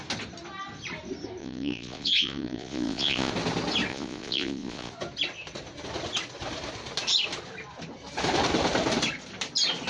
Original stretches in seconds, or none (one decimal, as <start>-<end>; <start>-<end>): 0.0-1.4; 3.3-3.9; 4.9-9.9